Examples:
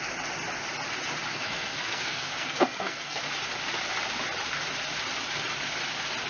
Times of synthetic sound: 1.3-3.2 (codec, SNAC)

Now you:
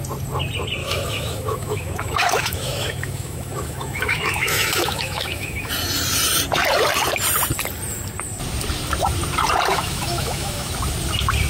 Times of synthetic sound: 0.8-5.7 (autoencoder, DAC-VAE); 9.7-10.7

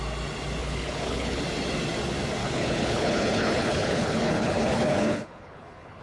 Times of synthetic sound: 0.6-1.4 (codec, HILCodec); 2.4-6.0

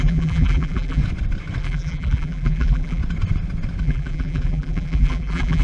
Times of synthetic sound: 0.0-1.0 (vocoder, BigVGAN v2); 1.6-3.0; 3.8-5.6

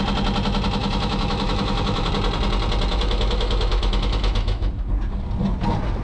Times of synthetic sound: 0.8-2.1 (autoencoder, DAC-VAE); 2.9-4.7